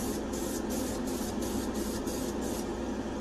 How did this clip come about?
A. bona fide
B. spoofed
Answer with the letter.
A